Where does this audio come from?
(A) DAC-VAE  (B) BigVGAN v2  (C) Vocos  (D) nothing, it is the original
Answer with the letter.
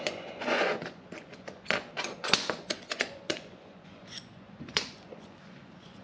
C